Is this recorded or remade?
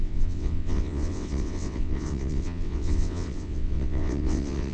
remade